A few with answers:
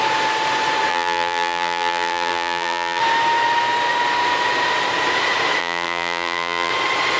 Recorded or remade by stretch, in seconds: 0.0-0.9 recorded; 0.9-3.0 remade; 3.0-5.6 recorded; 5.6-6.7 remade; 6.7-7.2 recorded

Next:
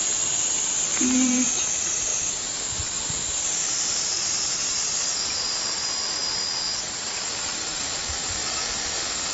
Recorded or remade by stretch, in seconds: 0.0-6.2 remade; 6.2-6.9 recorded; 6.9-9.3 remade